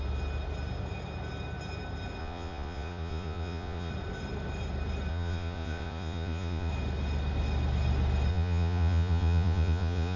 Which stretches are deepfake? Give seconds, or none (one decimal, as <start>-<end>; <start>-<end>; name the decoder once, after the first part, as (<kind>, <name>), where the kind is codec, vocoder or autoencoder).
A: 2.2-3.9 (vocoder, Vocos); 5.1-6.7; 8.3-10.2